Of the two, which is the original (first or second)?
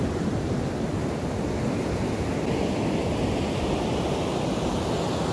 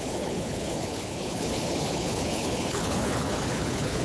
first